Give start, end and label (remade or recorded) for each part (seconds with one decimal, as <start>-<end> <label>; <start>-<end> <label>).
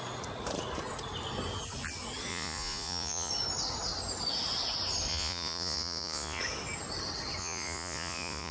0.0-2.3 recorded; 2.3-3.3 remade; 3.3-5.1 recorded; 5.1-6.4 remade; 6.4-7.4 recorded; 7.4-8.5 remade